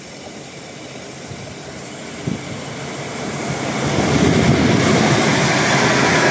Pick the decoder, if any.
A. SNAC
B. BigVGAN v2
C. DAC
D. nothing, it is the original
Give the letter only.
D